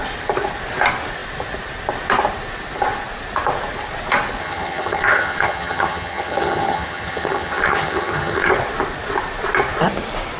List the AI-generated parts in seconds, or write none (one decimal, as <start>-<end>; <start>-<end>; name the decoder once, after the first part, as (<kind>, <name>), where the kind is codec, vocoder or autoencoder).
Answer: 4.4-8.5 (vocoder, HiFi-GAN)